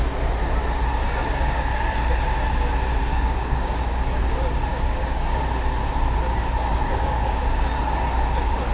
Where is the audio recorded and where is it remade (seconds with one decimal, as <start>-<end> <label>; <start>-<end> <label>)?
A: 0.0-3.1 recorded; 3.1-3.7 remade; 3.7-4.7 recorded; 4.7-5.4 remade; 5.4-6.7 recorded; 6.7-7.4 remade; 7.4-8.7 recorded

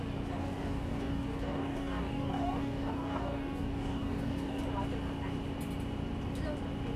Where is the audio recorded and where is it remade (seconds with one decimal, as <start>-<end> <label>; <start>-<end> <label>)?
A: 0.0-0.4 recorded; 0.4-4.6 remade; 4.6-7.0 recorded

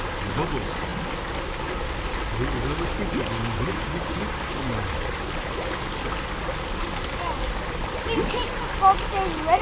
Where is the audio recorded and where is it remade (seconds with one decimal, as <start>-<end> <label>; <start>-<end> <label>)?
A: 0.0-3.7 recorded; 3.7-4.6 remade; 4.6-9.6 recorded

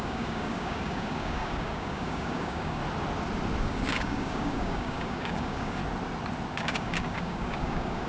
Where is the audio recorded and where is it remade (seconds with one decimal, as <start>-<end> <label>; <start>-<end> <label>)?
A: 0.0-2.8 remade; 2.8-3.6 recorded; 3.6-5.8 remade; 5.8-6.5 recorded; 6.5-8.1 remade

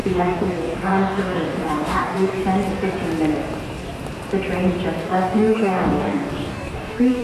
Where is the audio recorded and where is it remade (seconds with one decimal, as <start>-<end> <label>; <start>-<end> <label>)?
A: 0.0-2.4 remade; 2.4-5.0 recorded; 5.0-7.2 remade

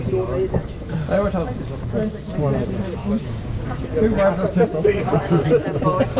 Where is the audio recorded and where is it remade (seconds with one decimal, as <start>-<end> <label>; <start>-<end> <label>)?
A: 0.0-3.0 recorded; 3.0-3.6 remade; 3.6-4.7 recorded; 4.7-5.5 remade; 5.5-6.2 recorded